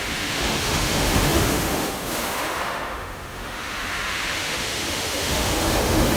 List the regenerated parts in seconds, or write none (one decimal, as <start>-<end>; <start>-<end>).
0.0-6.2